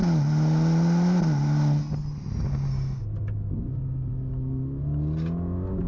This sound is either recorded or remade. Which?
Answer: recorded